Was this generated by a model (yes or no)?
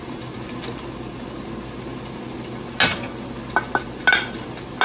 no